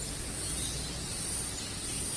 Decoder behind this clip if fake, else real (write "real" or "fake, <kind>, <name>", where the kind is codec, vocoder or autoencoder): real